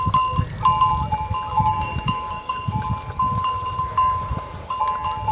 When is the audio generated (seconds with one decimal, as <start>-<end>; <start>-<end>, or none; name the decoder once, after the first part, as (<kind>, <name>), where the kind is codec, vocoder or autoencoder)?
1.5-2.9 (codec, DAC)

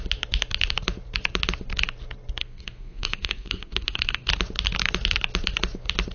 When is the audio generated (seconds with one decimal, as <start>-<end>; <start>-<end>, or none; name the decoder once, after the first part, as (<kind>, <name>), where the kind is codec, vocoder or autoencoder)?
2.4-4.3 (codec, SNAC)

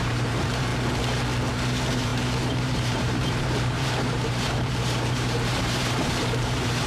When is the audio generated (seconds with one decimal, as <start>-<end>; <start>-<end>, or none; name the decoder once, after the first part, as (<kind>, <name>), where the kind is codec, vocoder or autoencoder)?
0.0-0.7 (vocoder, BigVGAN v2); 1.5-6.9

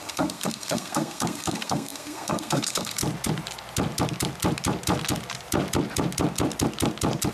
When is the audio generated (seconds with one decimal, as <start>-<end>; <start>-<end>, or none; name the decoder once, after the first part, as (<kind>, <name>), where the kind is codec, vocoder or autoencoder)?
0.0-3.0 (codec, SNAC)